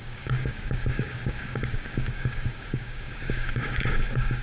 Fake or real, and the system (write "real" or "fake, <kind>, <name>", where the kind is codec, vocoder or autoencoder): fake, codec, DAC